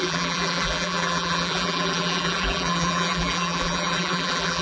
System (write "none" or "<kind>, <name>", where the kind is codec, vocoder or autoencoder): vocoder, BigVGAN v2